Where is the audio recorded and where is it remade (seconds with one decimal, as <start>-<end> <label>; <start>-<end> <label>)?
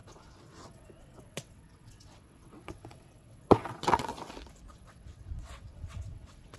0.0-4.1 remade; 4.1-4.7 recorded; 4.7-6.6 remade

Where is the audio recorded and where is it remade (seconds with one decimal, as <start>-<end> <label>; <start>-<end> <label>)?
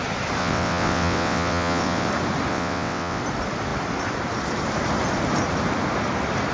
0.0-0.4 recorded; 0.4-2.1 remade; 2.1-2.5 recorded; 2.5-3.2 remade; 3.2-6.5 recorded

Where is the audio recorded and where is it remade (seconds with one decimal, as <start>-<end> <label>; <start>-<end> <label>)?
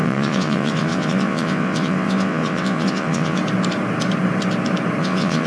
0.0-3.4 remade; 3.4-5.0 recorded; 5.0-5.5 remade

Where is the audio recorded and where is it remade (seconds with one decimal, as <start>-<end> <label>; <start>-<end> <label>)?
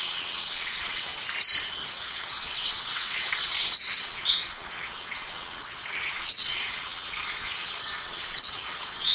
0.0-1.1 remade; 1.1-1.9 recorded; 1.9-9.1 remade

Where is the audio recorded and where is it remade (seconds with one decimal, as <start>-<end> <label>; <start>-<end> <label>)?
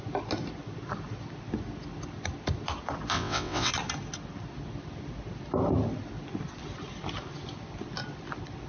0.0-3.1 recorded; 3.1-3.7 remade; 3.7-8.7 recorded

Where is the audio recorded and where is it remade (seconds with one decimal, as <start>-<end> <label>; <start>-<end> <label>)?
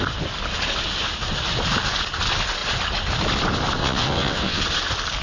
0.0-3.8 recorded; 3.8-4.6 remade; 4.6-5.2 recorded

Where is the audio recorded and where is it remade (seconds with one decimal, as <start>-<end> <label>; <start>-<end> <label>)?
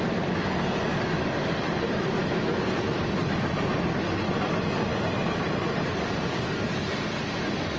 0.0-7.8 recorded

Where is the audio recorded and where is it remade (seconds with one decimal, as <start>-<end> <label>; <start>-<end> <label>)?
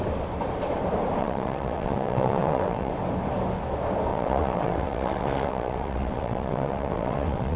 0.0-1.2 recorded; 1.2-2.9 remade; 2.9-4.1 recorded; 4.1-7.6 remade